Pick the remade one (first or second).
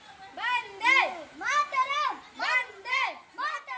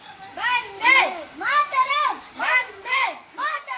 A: second